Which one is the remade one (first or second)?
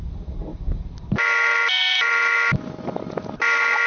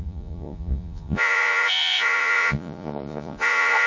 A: second